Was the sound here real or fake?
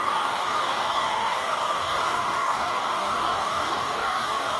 fake